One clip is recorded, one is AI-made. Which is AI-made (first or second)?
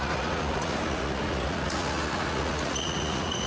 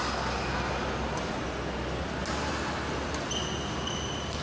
first